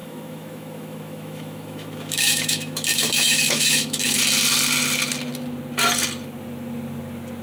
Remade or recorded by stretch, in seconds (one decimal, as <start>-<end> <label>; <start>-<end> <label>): 0.0-4.2 remade; 4.2-7.4 recorded